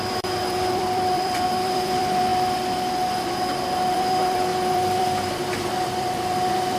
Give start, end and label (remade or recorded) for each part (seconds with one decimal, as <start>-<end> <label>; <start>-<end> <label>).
0.0-2.3 remade; 2.3-3.9 recorded; 3.9-6.8 remade